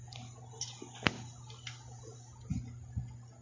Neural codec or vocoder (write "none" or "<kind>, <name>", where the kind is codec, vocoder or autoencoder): none